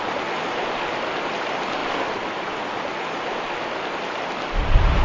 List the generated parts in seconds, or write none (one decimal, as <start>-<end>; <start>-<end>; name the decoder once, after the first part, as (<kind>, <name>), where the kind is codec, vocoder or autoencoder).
none